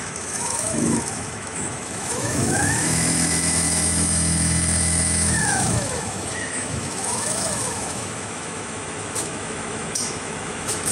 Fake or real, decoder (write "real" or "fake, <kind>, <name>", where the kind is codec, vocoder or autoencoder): fake, autoencoder, DAC-VAE